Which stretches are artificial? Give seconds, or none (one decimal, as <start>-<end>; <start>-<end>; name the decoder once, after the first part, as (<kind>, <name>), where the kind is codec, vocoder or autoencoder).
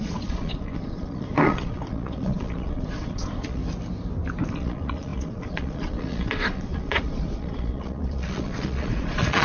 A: 0.0-3.6 (vocoder, Vocos); 4.5-9.4